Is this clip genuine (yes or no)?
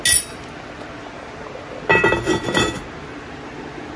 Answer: yes